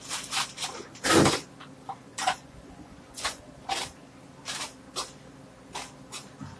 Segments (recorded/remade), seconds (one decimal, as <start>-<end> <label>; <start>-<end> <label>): 0.0-2.1 recorded; 2.1-3.4 remade; 3.4-6.6 recorded